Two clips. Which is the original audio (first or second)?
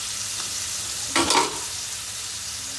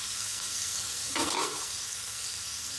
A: first